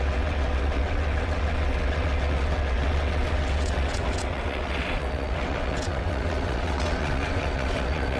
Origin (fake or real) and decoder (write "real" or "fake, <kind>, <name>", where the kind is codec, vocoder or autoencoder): fake, vocoder, WaveNeXt